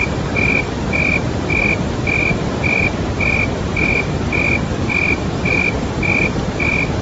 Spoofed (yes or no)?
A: no